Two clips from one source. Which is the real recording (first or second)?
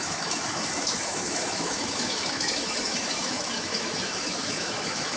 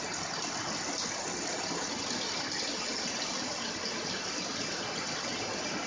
second